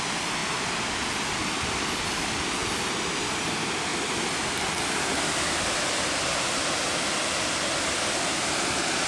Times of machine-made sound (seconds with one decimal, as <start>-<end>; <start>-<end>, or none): none